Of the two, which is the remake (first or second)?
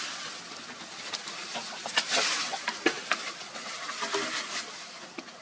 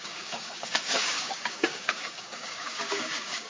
second